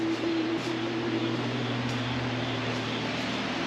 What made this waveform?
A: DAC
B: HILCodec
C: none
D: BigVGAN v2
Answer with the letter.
D